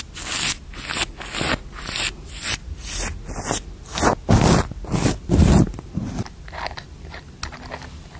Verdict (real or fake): real